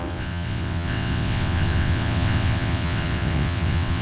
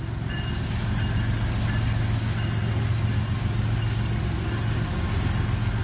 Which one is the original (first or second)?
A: second